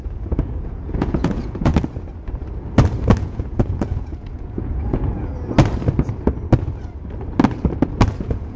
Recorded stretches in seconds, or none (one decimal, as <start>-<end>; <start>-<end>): 1.7-3.2; 5.3-8.2